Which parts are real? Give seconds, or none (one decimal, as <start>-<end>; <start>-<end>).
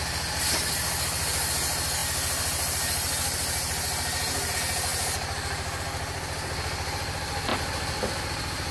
0.0-8.7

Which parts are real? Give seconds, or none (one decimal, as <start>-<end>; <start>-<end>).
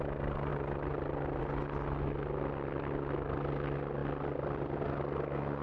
0.0-5.6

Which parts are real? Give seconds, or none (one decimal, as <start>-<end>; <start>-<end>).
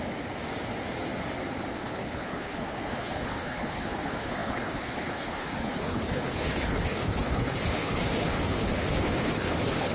0.0-1.8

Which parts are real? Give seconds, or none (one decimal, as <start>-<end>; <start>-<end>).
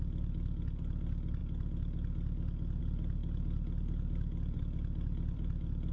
1.4-2.8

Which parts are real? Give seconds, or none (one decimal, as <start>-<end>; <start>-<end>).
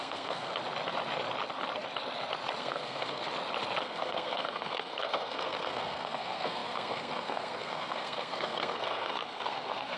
0.5-2.6; 3.2-3.8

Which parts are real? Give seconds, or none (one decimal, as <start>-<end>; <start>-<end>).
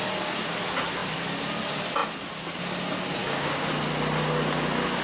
0.0-3.2; 3.7-5.0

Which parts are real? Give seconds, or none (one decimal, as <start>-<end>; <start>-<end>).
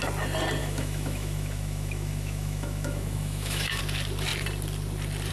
0.0-0.6; 3.8-5.3